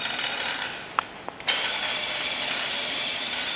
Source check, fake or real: real